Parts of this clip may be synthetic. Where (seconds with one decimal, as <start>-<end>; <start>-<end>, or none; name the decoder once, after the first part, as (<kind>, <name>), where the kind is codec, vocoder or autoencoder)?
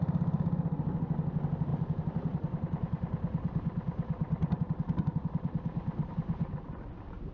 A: 1.7-6.1 (vocoder, BigVGAN v2)